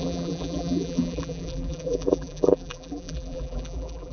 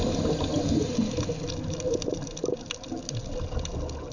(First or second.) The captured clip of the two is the second